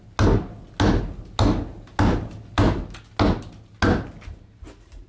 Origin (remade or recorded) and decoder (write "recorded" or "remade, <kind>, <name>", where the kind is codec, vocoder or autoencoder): recorded